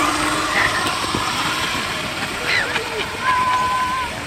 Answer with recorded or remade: recorded